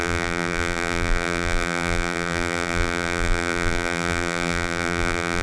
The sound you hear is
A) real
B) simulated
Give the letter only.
B